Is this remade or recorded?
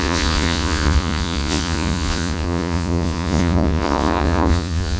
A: remade